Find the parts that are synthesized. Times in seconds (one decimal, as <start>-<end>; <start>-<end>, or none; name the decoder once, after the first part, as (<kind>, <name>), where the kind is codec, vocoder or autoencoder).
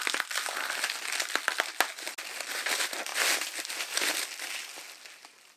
none